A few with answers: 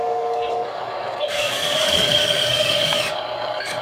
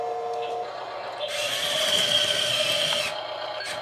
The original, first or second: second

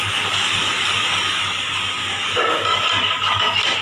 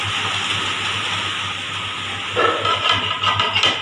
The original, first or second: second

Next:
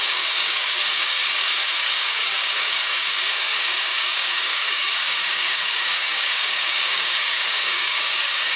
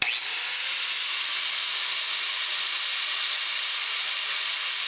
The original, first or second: second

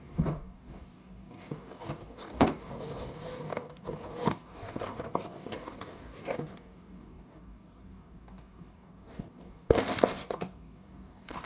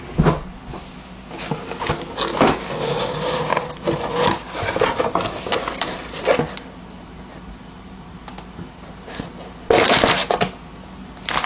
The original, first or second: second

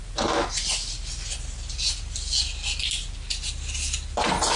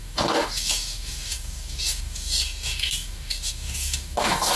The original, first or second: first